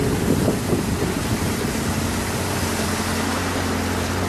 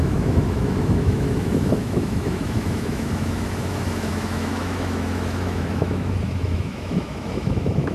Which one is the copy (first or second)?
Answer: second